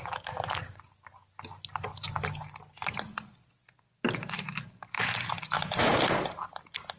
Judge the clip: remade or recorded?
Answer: recorded